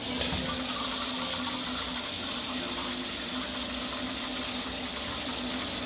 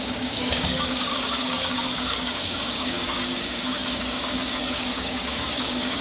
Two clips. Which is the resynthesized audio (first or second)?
second